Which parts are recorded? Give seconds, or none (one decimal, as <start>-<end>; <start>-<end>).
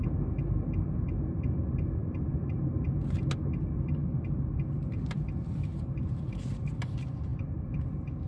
0.0-2.0; 2.9-4.0; 5.9-7.3; 7.8-8.3